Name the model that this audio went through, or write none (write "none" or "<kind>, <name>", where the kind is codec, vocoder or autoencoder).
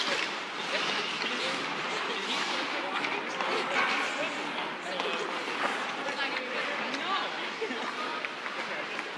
none